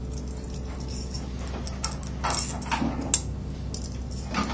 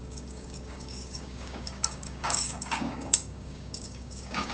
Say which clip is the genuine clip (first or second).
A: first